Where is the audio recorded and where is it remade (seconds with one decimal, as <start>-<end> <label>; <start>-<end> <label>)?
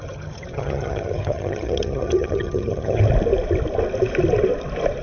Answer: 0.0-3.0 remade; 3.0-5.0 recorded